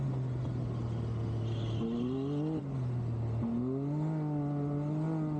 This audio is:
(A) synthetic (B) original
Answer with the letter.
B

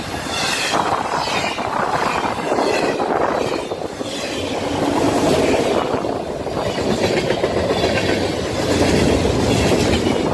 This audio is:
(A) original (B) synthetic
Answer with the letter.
A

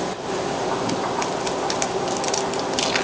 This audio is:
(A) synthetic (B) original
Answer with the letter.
B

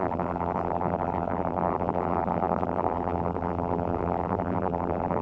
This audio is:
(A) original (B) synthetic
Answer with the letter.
B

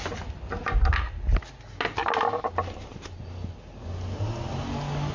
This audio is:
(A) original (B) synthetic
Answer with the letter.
A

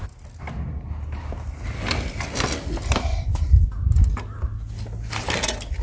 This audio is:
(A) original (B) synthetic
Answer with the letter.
A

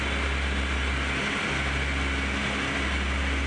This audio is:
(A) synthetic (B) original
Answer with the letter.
B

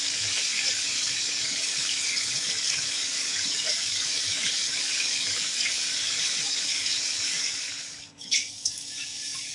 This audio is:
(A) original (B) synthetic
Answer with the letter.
B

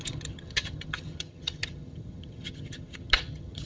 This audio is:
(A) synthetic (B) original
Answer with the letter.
A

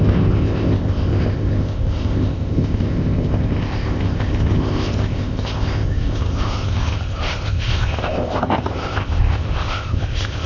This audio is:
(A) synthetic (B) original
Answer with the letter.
A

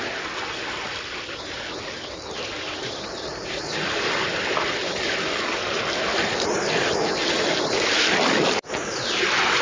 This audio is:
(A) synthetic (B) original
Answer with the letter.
B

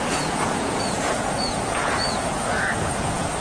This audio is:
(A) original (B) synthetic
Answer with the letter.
B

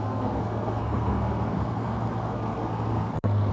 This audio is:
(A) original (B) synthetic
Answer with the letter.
B